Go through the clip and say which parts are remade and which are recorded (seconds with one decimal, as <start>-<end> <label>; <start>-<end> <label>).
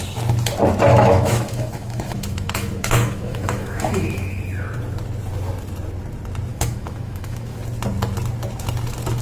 0.0-0.9 recorded; 0.9-4.4 remade; 4.4-6.5 recorded; 6.5-7.6 remade; 7.6-9.2 recorded